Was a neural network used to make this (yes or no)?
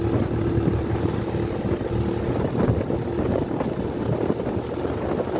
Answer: no